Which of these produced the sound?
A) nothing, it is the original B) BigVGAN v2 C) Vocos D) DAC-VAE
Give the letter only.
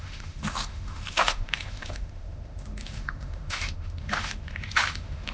D